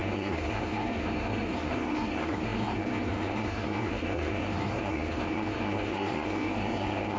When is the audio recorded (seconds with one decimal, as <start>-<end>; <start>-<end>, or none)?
none